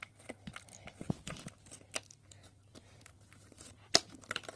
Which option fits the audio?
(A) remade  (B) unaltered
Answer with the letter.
A